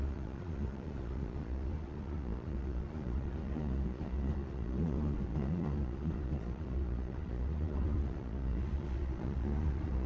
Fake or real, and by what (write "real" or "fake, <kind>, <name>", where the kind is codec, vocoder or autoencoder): fake, vocoder, Vocos